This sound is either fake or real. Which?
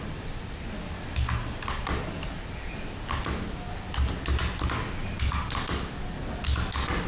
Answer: real